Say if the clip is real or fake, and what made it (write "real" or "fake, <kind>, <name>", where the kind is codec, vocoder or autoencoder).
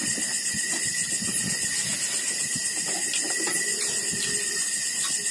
real